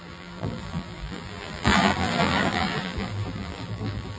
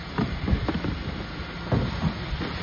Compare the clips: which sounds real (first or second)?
second